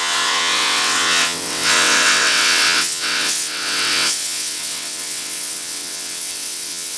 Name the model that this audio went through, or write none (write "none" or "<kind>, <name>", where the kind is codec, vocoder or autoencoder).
vocoder, WaveNeXt